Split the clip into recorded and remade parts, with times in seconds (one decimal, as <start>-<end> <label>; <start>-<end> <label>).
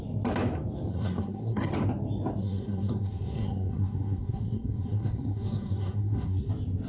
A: 0.0-0.9 recorded; 0.9-1.7 remade; 1.7-2.4 recorded; 2.4-6.5 remade; 6.5-6.9 recorded